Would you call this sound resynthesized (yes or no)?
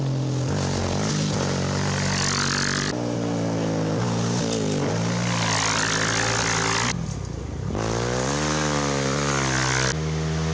no